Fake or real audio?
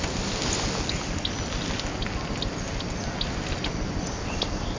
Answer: real